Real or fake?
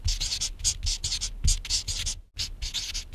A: real